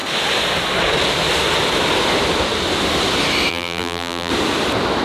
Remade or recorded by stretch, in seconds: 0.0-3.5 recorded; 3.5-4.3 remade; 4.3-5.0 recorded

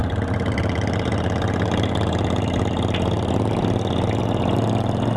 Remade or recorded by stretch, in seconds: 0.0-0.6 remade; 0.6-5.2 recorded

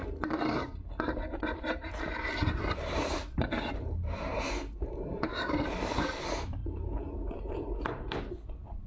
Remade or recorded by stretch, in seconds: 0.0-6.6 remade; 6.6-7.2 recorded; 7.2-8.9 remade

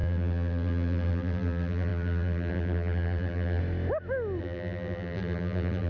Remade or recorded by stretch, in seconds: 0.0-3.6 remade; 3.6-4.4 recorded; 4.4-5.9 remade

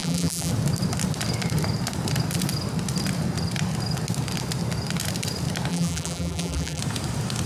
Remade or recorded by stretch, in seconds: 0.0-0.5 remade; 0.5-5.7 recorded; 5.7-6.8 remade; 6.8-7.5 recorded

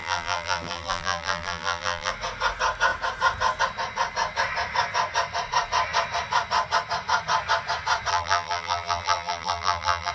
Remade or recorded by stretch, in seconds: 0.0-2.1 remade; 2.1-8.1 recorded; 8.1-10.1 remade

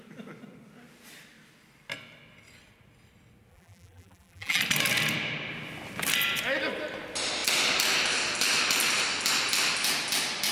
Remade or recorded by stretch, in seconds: 0.0-3.5 recorded; 3.5-4.6 remade; 4.6-10.5 recorded